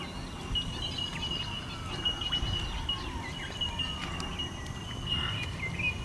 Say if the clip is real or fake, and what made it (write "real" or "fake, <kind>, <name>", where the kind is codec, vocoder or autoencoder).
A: real